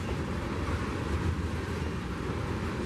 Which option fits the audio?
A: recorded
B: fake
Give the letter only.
A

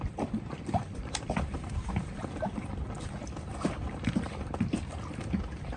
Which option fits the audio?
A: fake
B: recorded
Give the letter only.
A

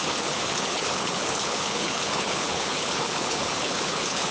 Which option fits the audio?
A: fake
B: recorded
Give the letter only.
A